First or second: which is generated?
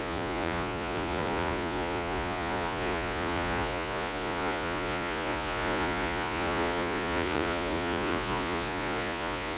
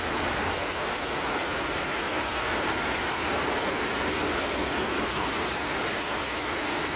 first